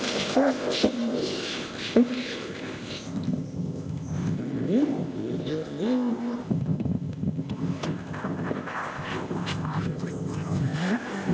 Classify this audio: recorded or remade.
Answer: remade